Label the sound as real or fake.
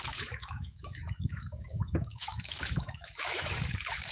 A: fake